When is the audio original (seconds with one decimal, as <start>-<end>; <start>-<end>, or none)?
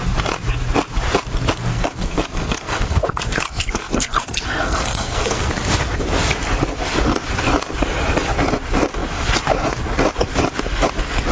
0.0-1.7; 5.5-11.3